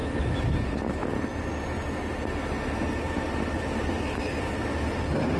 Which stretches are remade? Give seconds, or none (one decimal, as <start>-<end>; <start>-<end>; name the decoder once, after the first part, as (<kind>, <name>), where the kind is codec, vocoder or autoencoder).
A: none